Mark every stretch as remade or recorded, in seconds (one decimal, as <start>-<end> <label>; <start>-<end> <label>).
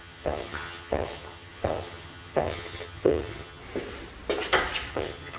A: 0.0-3.6 remade; 3.6-4.9 recorded; 4.9-5.4 remade